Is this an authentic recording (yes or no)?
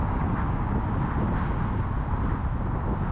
yes